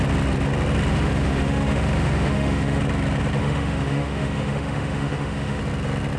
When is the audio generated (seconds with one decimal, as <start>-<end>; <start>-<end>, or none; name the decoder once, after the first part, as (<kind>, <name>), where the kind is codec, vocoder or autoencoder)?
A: 0.9-2.8 (autoencoder, DAC-VAE); 3.4-5.6